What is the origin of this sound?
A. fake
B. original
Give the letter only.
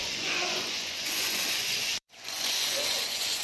A